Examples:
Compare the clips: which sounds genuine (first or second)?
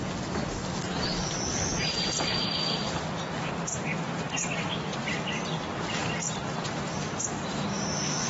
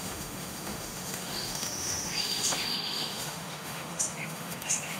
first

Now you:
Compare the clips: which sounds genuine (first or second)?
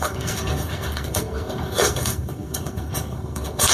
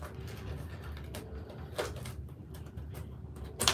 second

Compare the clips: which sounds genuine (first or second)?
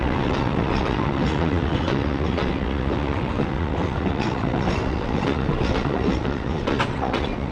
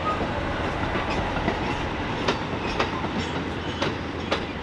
second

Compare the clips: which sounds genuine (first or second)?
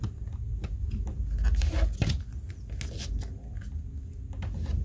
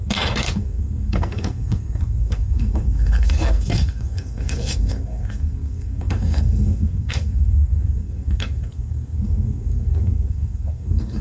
first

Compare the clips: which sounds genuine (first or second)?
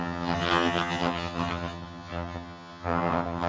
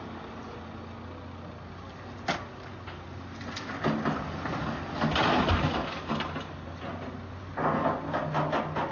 second